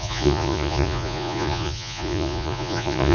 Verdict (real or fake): fake